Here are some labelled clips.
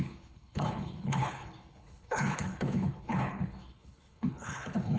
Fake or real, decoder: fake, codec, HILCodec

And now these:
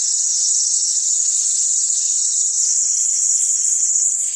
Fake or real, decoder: fake, vocoder, Vocos